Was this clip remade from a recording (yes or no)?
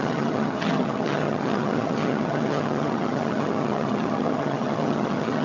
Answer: yes